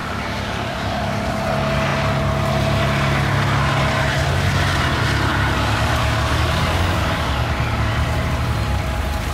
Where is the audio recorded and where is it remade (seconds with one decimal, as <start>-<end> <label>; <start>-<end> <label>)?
0.0-1.4 remade; 1.4-5.3 recorded; 5.3-7.9 remade; 7.9-9.3 recorded